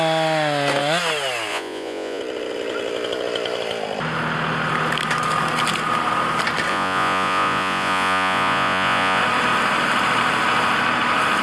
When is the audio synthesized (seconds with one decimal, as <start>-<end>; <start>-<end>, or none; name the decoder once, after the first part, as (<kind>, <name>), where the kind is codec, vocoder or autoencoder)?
1.5-2.2 (vocoder, Vocos); 6.7-9.2